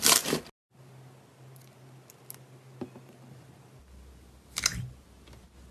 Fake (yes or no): no